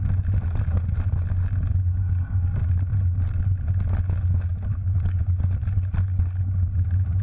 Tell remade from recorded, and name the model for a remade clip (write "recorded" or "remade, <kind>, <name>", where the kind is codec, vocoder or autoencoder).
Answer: recorded